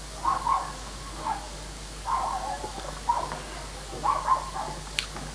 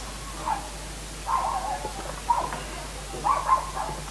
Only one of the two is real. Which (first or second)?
second